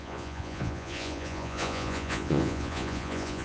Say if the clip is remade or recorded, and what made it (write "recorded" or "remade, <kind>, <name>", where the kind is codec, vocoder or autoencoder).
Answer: remade, vocoder, Vocos